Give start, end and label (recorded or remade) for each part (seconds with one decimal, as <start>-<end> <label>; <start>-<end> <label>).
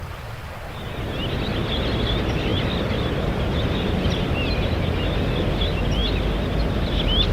0.0-7.3 recorded